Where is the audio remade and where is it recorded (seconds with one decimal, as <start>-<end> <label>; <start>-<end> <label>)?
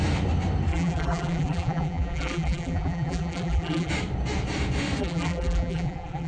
0.0-0.7 recorded; 0.7-3.9 remade; 3.9-5.0 recorded; 5.0-6.3 remade